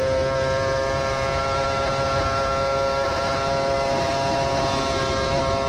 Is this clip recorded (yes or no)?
yes